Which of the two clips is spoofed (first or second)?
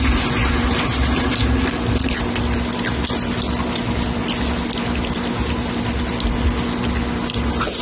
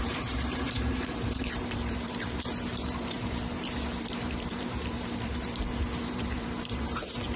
second